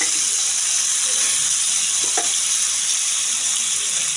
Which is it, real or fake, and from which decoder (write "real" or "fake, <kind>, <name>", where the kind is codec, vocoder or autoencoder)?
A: real